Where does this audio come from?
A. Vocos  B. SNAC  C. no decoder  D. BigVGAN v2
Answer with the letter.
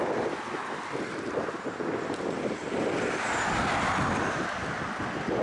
C